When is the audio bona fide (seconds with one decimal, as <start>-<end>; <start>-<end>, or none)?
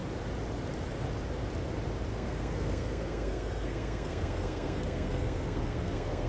0.0-2.1